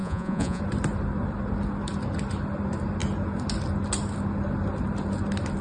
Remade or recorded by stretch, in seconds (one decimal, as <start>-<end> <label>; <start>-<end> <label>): 0.0-0.6 remade; 0.6-5.6 recorded